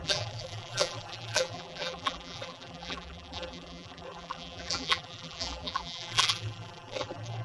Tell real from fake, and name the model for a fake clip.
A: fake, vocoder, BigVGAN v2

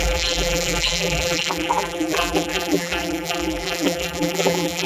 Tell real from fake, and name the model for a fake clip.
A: fake, vocoder, BigVGAN v2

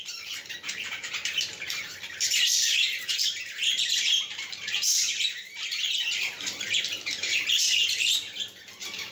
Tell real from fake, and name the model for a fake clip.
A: fake, vocoder, BigVGAN v2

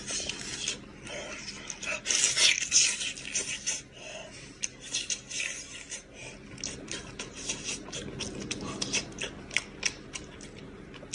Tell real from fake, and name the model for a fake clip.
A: real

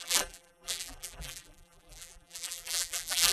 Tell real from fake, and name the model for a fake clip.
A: fake, vocoder, BigVGAN v2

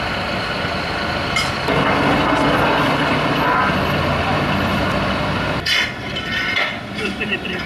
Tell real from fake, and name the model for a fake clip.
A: real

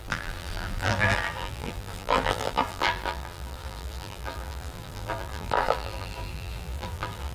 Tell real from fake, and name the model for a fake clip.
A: fake, vocoder, BigVGAN v2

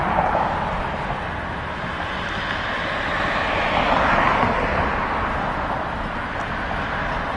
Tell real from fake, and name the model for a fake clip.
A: real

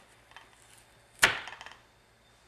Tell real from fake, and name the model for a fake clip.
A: real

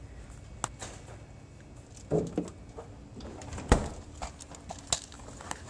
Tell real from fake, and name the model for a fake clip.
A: real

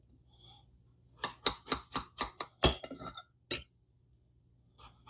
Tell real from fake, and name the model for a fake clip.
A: real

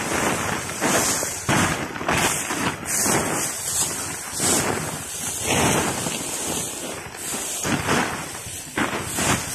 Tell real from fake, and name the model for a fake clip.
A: real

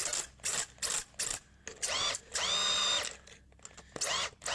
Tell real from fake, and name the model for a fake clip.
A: real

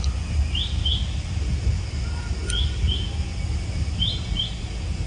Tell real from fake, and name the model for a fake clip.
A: fake, vocoder, BigVGAN v2